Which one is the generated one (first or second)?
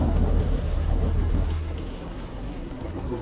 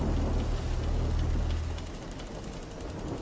first